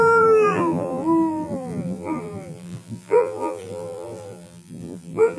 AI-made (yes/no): yes